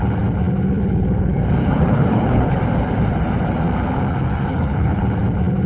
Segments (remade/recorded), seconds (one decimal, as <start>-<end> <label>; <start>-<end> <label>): 0.0-1.6 recorded; 1.6-2.6 remade; 2.6-4.5 recorded; 4.5-5.0 remade; 5.0-5.7 recorded